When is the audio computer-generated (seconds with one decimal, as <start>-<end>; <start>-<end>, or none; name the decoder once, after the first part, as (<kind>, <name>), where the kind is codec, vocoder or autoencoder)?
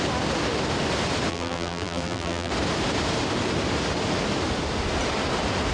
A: 1.3-2.5 (vocoder, BigVGAN v2)